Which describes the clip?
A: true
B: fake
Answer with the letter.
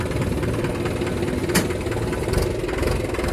A